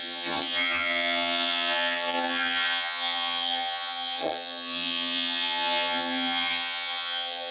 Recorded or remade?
remade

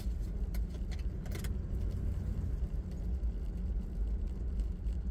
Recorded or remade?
recorded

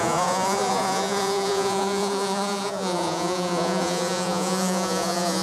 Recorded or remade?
remade